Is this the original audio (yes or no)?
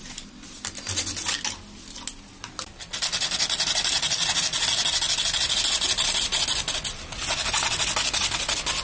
yes